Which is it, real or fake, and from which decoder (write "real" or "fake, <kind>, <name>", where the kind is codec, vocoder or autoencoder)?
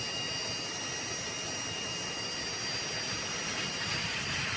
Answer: real